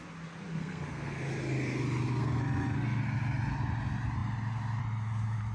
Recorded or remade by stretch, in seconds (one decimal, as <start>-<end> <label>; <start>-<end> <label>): 0.0-0.5 recorded; 0.5-1.2 remade; 1.2-2.1 recorded; 2.1-3.0 remade; 3.0-5.5 recorded